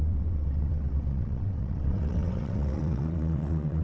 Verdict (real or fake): fake